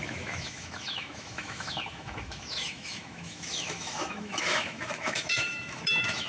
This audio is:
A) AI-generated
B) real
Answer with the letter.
A